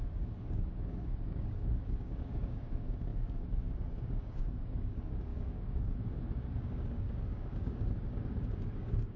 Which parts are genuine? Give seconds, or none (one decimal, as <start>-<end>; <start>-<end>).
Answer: none